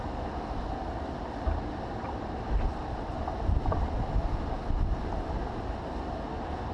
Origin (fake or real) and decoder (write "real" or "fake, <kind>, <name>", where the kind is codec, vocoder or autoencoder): real